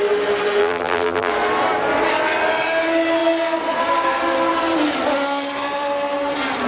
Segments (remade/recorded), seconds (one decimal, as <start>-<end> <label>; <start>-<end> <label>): 0.0-0.6 recorded; 0.6-1.3 remade; 1.3-6.7 recorded